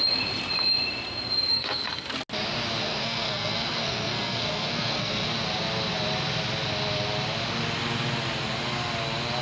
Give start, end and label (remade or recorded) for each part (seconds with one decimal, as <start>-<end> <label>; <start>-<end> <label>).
0.0-1.5 recorded; 1.5-2.1 remade; 2.1-2.8 recorded; 2.8-5.3 remade; 5.3-9.4 recorded